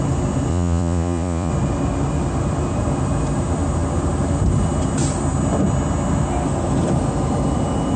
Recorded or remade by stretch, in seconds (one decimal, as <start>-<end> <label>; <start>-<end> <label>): 0.0-0.5 recorded; 0.5-1.5 remade; 1.5-8.0 recorded

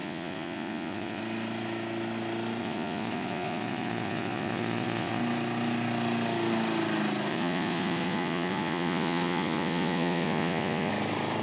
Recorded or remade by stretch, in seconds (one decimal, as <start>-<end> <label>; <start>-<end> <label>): 0.0-1.2 remade; 1.2-2.6 recorded; 2.6-5.2 remade; 5.2-7.3 recorded; 7.3-10.9 remade; 10.9-11.4 recorded

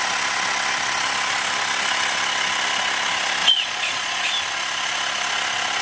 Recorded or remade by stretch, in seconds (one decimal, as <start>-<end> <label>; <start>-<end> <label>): 0.0-3.4 recorded; 3.4-4.3 remade; 4.3-5.8 recorded

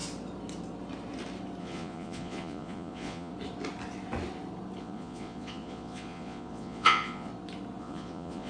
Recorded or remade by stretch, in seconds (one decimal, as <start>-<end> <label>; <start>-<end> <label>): 0.0-1.6 recorded; 1.6-3.3 remade; 3.3-4.8 recorded; 4.8-7.3 remade; 7.3-7.8 recorded; 7.8-8.5 remade

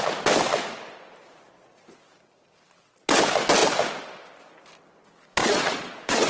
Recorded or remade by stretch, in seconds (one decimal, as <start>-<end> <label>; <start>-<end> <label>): 0.0-5.4 recorded; 5.4-6.3 remade